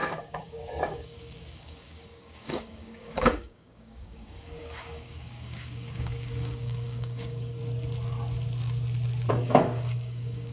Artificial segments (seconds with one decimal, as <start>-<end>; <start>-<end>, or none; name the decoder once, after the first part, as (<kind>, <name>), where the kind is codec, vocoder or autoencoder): 0.0-7.6 (codec, DAC); 9.3-10.5

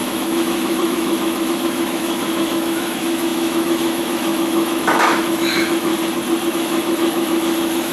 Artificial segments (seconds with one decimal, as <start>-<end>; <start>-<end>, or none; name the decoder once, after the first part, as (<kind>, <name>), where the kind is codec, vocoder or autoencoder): 0.0-5.9 (autoencoder, DAC-VAE); 6.5-7.9

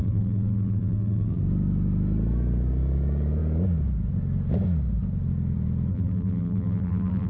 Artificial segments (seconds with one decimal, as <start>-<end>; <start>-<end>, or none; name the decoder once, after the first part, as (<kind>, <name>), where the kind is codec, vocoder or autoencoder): 0.0-1.4 (vocoder, BigVGAN v2); 5.9-7.3

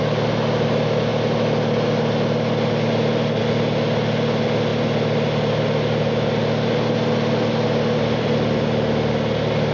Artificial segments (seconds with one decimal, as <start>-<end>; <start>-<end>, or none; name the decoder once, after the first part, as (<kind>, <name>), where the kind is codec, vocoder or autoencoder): none

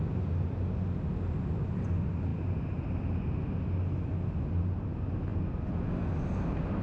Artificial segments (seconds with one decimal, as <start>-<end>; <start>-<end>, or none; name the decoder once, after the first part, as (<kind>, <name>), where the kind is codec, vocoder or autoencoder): none

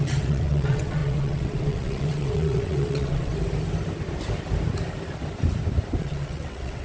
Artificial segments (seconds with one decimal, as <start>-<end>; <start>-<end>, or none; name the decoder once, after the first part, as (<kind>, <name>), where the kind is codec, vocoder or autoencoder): 0.0-3.3 (vocoder, WaveNeXt); 6.0-6.8

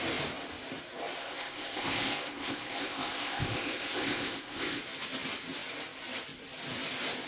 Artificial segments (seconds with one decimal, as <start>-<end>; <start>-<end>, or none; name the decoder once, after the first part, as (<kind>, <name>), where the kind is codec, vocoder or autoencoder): 1.2-4.8 (codec, ZipCodec)